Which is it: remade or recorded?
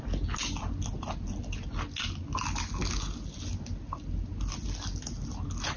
recorded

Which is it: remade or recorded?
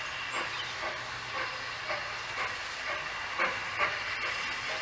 recorded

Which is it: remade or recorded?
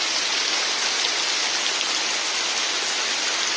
recorded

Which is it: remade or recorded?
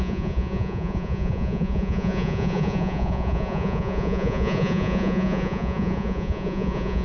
remade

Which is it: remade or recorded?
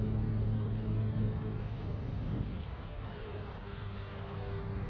remade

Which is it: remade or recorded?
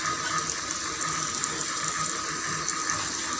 recorded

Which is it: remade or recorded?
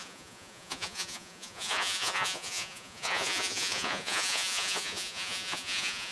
remade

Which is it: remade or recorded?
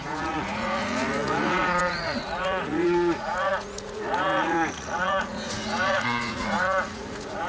remade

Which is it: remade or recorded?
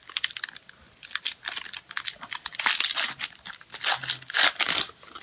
recorded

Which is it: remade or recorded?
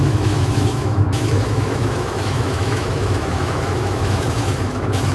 remade